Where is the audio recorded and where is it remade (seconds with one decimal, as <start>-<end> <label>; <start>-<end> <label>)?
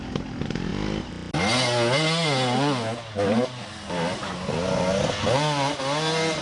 0.0-6.4 recorded